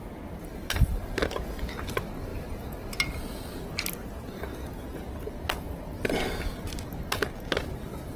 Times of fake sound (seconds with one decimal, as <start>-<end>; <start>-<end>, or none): 0.5-1.4